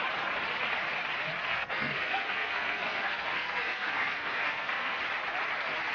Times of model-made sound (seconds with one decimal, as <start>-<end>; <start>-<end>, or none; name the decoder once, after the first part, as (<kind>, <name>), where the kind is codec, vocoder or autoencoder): 1.5-5.0 (codec, SNAC)